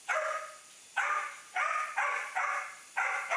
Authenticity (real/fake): real